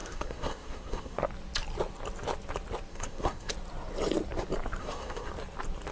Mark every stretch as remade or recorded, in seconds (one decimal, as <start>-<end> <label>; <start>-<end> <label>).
0.0-1.2 remade; 1.2-2.9 recorded; 2.9-3.5 remade; 3.5-4.8 recorded; 4.8-5.3 remade; 5.3-5.9 recorded